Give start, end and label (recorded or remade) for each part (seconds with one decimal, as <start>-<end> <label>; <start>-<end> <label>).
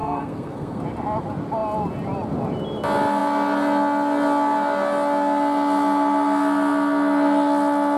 0.0-0.8 remade; 0.8-8.0 recorded